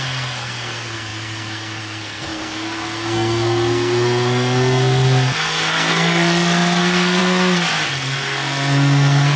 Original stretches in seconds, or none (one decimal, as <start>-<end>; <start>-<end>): none